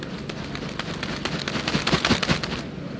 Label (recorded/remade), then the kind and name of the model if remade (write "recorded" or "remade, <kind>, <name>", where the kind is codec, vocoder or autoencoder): recorded